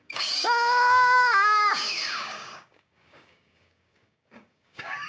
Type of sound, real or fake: fake